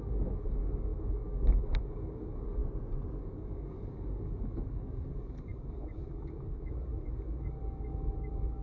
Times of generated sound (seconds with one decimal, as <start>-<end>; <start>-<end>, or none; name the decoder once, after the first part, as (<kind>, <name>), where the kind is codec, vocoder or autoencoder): 0.0-2.6 (codec, DAC); 3.2-8.6